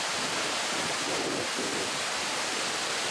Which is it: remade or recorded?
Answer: recorded